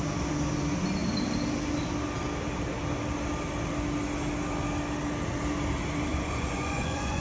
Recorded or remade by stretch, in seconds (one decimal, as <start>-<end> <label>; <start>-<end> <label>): 0.0-6.1 recorded; 6.1-7.2 remade